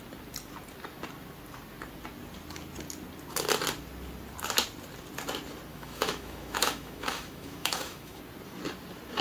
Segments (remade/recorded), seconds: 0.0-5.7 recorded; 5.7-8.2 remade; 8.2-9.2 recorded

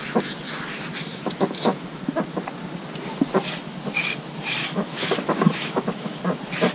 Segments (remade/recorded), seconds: 0.0-1.1 recorded; 1.1-2.0 remade; 2.0-4.6 recorded; 4.6-6.2 remade; 6.2-6.7 recorded

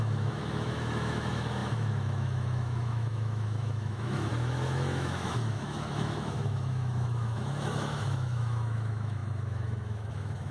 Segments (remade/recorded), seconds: 0.0-10.5 remade